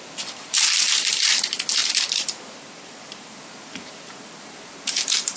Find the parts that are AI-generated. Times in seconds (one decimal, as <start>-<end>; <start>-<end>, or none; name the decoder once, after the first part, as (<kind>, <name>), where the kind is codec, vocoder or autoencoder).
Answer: 0.0-5.4 (vocoder, BigVGAN v2)